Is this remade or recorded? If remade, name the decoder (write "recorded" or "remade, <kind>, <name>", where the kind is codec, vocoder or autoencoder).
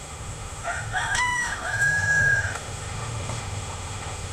remade, autoencoder, DAC-VAE